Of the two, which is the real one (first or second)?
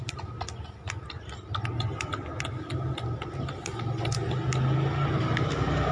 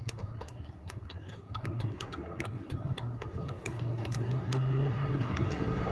first